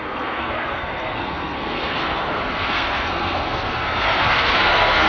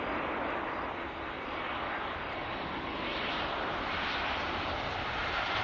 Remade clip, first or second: first